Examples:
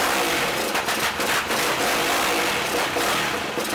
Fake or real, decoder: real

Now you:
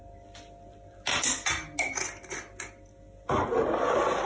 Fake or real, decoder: real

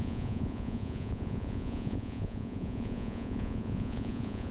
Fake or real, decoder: fake, vocoder, Vocos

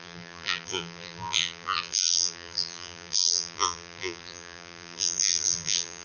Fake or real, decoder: fake, vocoder, BigVGAN v2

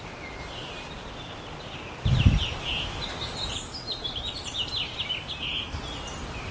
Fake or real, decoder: real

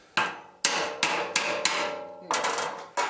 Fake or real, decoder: real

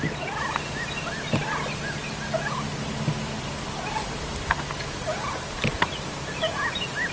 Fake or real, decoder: real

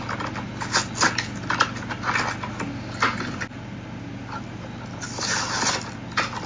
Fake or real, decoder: real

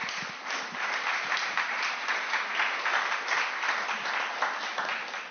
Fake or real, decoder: real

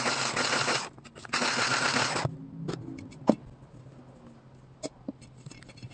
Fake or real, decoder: real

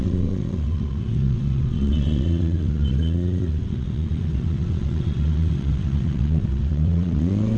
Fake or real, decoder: fake, vocoder, WaveNeXt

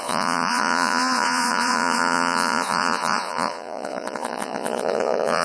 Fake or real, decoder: fake, vocoder, Vocos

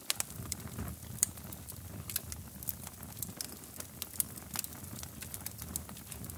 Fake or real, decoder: real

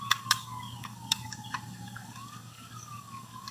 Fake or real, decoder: fake, codec, DAC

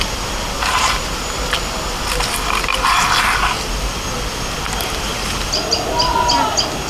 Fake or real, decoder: real